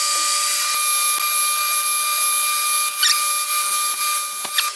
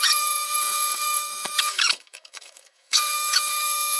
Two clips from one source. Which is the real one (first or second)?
first